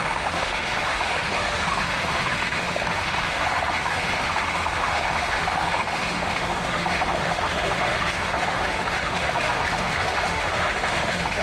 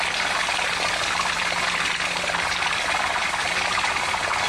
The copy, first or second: first